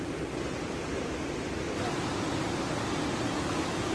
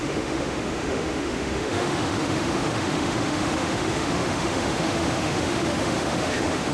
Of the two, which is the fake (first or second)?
second